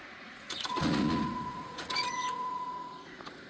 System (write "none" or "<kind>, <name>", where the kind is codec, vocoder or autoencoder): vocoder, Vocos